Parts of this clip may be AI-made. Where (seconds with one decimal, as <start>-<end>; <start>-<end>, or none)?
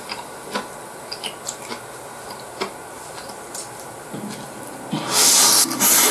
none